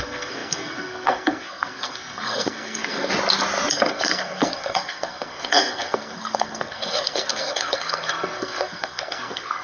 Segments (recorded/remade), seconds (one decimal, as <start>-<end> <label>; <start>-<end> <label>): 0.0-3.1 remade; 3.1-3.7 recorded; 3.7-9.6 remade